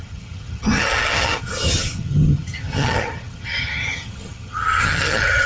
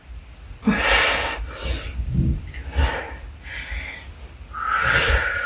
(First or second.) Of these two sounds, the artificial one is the first